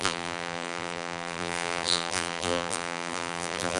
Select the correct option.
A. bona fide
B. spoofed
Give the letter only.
B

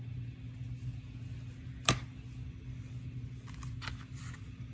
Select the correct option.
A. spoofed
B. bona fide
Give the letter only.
B